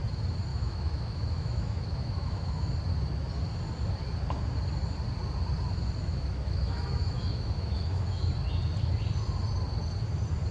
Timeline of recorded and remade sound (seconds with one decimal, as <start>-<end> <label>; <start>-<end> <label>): 0.0-0.5 recorded; 0.5-2.7 remade; 2.7-6.0 recorded; 6.0-8.3 remade; 8.3-10.5 recorded